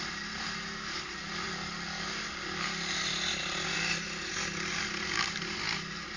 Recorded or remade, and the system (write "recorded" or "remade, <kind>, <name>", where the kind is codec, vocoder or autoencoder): recorded